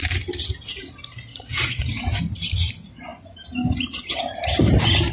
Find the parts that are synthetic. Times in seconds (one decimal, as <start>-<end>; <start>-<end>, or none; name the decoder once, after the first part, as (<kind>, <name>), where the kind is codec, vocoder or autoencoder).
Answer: 1.3-2.2 (vocoder, WaveNeXt)